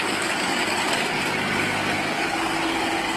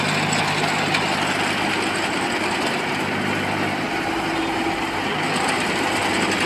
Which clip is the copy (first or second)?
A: first